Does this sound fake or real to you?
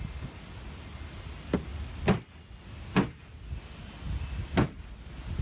real